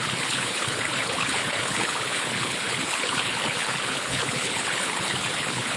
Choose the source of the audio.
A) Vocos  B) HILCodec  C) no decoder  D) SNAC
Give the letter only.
B